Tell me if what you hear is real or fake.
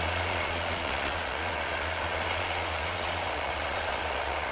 fake